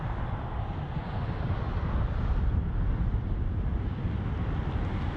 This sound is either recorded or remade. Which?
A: recorded